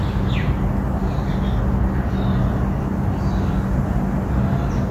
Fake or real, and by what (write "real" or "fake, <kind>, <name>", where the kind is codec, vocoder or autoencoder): real